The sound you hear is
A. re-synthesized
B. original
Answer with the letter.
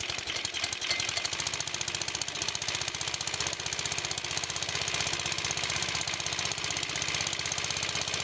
B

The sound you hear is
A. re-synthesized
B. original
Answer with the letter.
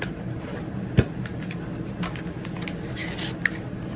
B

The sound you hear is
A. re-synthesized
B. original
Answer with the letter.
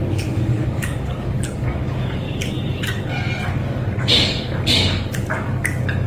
A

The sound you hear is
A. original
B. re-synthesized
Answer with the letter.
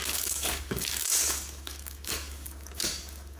B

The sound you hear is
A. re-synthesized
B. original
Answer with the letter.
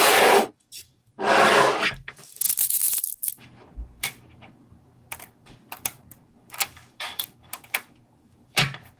A